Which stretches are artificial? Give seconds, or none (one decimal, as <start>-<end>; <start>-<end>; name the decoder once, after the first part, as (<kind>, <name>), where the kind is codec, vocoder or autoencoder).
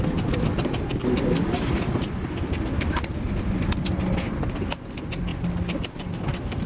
none